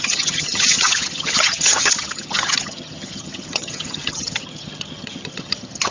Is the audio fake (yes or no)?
yes